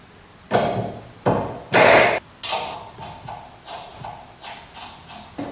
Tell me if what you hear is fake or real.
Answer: real